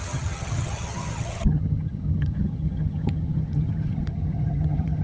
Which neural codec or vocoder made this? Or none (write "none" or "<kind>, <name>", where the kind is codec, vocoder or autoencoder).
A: vocoder, HiFi-GAN